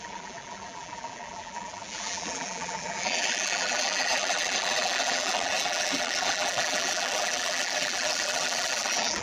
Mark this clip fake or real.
fake